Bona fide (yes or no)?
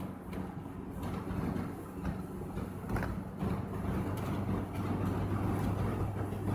yes